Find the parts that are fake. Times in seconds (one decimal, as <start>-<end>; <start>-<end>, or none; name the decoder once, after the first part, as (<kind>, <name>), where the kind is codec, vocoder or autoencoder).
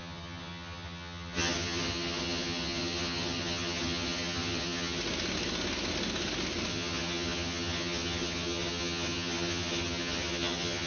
0.0-5.0 (vocoder, HiFi-GAN); 6.7-10.9